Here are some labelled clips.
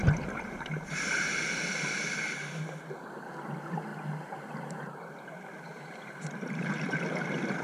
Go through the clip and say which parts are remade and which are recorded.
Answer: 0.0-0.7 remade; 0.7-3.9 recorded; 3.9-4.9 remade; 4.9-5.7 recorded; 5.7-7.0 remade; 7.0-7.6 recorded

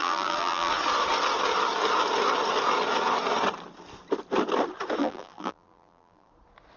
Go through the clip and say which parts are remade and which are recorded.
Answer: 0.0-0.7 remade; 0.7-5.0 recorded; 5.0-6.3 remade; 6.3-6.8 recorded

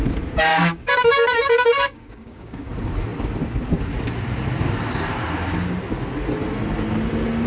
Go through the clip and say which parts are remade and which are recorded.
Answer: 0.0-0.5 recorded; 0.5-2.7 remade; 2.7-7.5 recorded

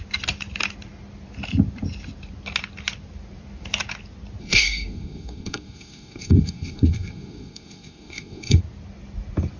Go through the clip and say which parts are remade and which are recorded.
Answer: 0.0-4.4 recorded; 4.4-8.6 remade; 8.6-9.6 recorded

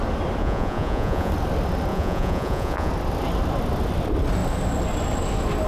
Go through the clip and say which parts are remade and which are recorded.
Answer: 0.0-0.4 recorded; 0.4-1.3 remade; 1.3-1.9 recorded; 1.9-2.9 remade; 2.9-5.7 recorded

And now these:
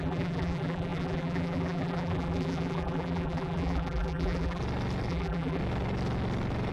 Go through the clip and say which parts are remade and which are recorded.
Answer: 0.0-4.6 remade; 4.6-5.1 recorded; 5.1-5.6 remade; 5.6-6.7 recorded